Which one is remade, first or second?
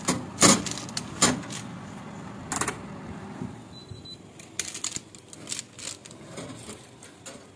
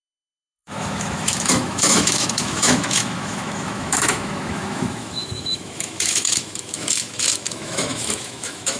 second